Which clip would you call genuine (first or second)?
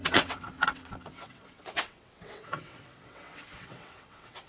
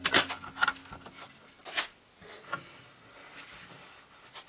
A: second